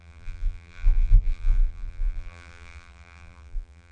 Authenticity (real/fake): fake